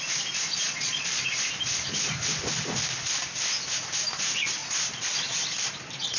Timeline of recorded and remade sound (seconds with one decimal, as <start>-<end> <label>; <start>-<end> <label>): 0.0-0.6 recorded; 0.6-1.2 remade; 1.2-6.2 recorded

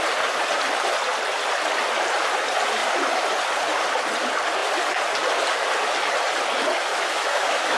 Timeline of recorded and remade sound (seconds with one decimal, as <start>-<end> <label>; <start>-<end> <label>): 0.0-6.9 recorded; 6.9-7.8 remade

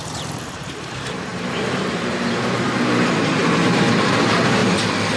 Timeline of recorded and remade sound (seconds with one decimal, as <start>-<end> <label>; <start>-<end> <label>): 0.0-3.4 remade; 3.4-4.0 recorded; 4.0-4.6 remade; 4.6-5.2 recorded

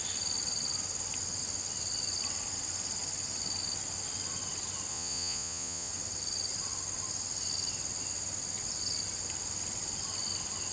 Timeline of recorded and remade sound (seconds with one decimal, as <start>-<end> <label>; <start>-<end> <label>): 0.0-4.9 recorded; 4.9-5.9 remade; 5.9-10.7 recorded

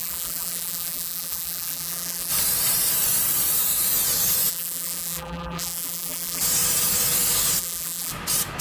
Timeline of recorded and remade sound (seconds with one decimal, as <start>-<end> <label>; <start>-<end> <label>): 0.0-2.3 remade; 2.3-4.5 recorded; 4.5-6.4 remade; 6.4-7.6 recorded; 7.6-8.1 remade; 8.1-8.6 recorded